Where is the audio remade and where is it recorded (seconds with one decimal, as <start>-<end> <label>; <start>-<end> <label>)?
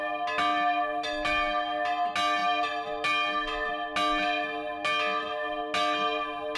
0.0-6.6 recorded